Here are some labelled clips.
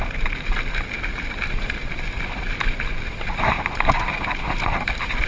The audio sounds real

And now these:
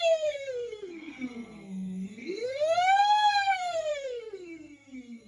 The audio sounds fake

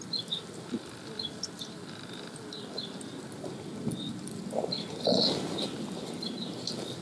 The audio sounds real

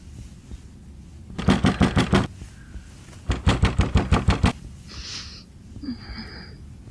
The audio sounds real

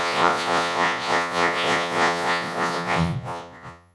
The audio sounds fake